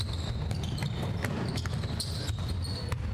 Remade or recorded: recorded